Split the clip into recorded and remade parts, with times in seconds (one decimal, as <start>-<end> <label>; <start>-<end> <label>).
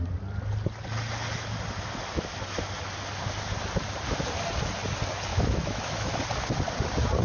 0.0-5.3 recorded; 5.3-6.1 remade; 6.1-7.2 recorded